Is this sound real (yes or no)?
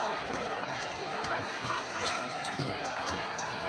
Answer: no